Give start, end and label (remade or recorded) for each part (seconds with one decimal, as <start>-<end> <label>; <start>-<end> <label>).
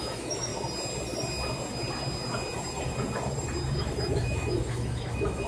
0.0-0.5 remade; 0.5-3.8 recorded; 3.8-5.5 remade